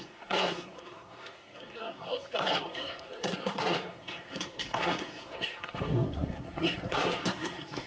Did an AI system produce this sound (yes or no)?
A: yes